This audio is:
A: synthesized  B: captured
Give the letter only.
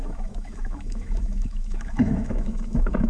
A